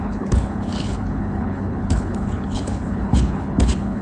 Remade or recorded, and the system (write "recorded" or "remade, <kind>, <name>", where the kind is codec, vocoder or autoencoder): remade, codec, HILCodec